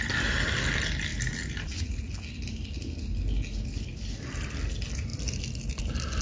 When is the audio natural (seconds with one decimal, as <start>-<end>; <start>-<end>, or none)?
0.0-6.2